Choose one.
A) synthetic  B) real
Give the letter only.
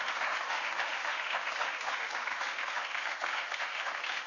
A